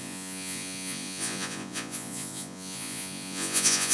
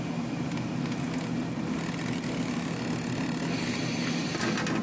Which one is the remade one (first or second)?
first